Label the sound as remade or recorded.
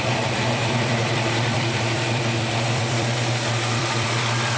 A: remade